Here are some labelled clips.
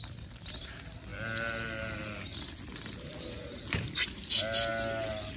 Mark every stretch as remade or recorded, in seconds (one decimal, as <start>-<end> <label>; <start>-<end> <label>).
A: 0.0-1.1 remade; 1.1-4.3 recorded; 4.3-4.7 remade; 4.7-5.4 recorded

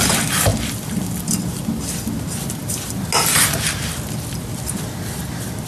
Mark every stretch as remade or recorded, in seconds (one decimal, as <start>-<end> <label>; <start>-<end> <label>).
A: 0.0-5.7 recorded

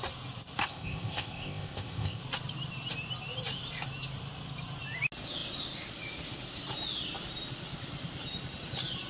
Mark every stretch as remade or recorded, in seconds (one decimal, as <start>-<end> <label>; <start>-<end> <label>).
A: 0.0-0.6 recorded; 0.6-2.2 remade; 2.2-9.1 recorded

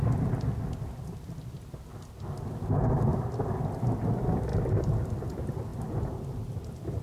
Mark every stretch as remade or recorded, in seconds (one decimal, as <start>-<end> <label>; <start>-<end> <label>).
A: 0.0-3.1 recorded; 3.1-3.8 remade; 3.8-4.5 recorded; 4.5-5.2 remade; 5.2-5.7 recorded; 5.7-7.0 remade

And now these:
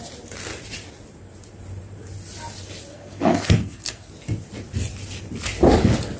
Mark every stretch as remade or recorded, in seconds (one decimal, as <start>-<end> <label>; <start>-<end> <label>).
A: 0.0-2.9 recorded; 2.9-4.1 remade; 4.1-6.2 recorded

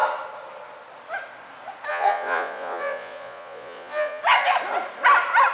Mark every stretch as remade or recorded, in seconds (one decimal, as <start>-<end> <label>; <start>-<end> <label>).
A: 0.0-1.9 recorded; 1.9-4.2 remade; 4.2-5.5 recorded

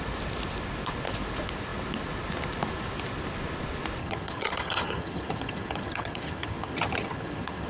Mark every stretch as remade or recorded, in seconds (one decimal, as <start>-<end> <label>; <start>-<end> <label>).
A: 0.0-4.0 recorded; 4.0-7.7 remade

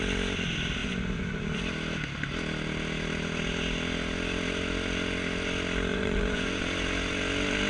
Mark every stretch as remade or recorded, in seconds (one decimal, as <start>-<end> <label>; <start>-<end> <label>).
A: 0.0-0.8 recorded; 0.8-1.6 remade; 1.6-5.9 recorded; 5.9-6.6 remade; 6.6-7.7 recorded